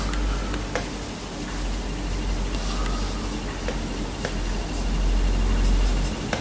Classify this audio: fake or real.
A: real